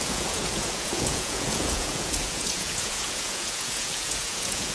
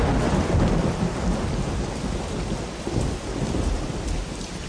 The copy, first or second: first